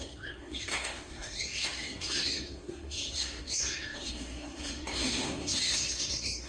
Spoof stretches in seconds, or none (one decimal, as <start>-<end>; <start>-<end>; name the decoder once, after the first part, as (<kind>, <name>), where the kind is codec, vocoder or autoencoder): 0.0-6.5 (codec, SNAC)